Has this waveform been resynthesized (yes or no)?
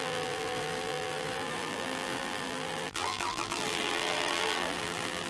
yes